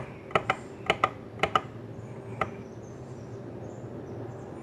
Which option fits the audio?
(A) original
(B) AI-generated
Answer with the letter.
A